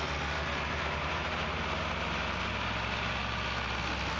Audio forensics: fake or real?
real